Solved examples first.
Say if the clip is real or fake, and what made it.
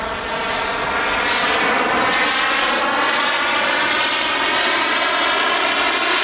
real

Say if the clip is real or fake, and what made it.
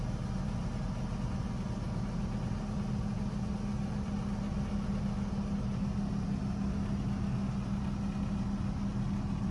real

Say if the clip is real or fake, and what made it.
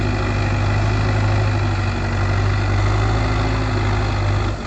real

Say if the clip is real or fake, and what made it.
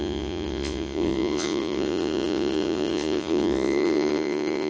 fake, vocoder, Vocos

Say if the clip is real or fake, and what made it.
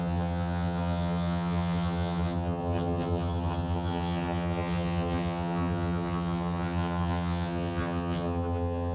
fake, vocoder, HiFi-GAN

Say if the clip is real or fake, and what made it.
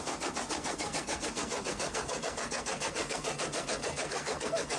fake, codec, SNAC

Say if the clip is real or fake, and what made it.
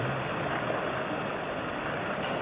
real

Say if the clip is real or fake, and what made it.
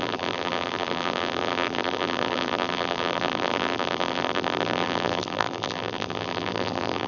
fake, vocoder, BigVGAN v2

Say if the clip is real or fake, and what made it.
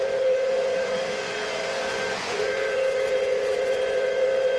fake, vocoder, Vocos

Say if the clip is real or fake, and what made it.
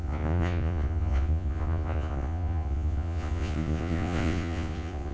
fake, vocoder, Vocos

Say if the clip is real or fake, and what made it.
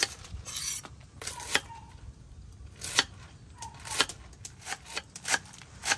real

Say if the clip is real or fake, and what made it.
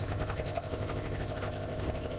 fake, codec, ZipCodec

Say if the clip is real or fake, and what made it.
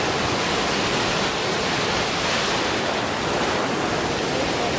real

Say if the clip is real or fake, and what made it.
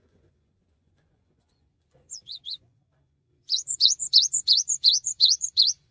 fake, vocoder, Vocos